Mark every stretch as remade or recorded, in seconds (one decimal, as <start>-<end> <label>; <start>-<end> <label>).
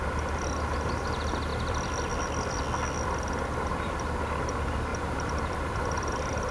0.0-1.5 recorded; 1.5-2.1 remade; 2.1-4.9 recorded; 4.9-6.5 remade